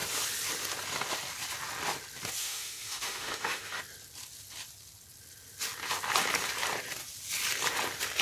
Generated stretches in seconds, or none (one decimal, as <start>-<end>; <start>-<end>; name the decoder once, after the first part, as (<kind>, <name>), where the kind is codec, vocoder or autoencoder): 2.4-3.8 (autoencoder, DAC-VAE)